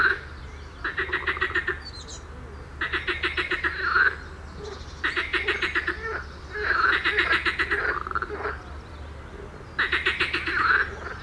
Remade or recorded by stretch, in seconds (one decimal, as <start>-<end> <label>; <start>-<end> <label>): 0.0-11.2 recorded

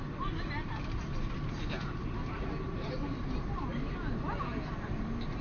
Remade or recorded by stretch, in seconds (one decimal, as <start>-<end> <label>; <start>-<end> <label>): 0.0-5.4 recorded

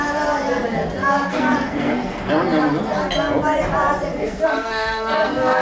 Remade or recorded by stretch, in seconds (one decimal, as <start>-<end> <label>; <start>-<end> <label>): 0.0-1.0 recorded; 1.0-2.3 remade; 2.3-4.1 recorded; 4.1-5.6 remade

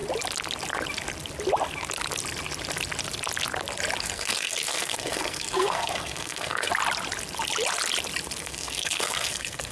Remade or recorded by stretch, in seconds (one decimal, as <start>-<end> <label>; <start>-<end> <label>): 0.0-4.0 recorded; 4.0-6.7 remade; 6.7-8.4 recorded; 8.4-9.7 remade

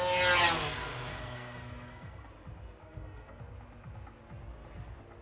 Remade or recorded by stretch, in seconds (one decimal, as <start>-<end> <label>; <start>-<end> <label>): 0.0-1.1 recorded; 1.1-2.3 remade; 2.3-2.8 recorded; 2.8-3.4 remade; 3.4-5.2 recorded

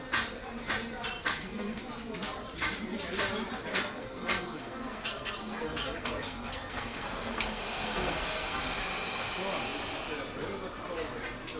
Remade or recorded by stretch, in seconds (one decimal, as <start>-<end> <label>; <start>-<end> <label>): 0.0-1.2 recorded; 1.2-1.8 remade; 1.8-3.7 recorded; 3.7-8.6 remade; 8.6-11.6 recorded

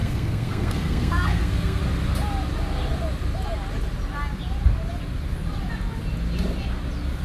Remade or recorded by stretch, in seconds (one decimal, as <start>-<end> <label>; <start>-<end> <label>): 0.0-1.8 remade; 1.8-7.2 recorded

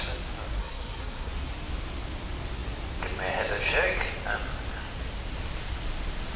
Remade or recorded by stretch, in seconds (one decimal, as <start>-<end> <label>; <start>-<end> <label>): 0.0-0.6 recorded; 0.6-1.3 remade; 1.3-6.4 recorded